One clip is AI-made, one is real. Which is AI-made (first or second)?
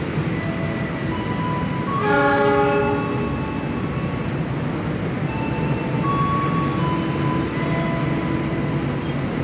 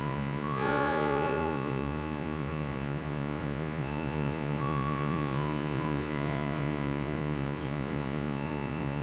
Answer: second